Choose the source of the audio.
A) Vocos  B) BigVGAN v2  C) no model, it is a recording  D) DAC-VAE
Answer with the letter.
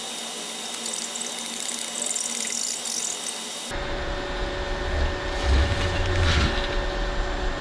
C